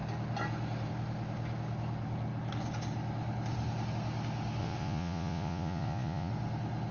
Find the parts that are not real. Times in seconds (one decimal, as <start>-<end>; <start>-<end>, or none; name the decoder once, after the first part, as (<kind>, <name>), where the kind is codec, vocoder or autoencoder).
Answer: 4.6-6.3 (vocoder, Vocos)